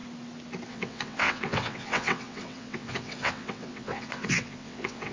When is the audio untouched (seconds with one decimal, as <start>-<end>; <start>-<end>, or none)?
0.0-0.7